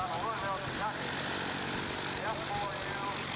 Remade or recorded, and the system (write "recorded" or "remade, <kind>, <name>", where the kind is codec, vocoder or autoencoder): recorded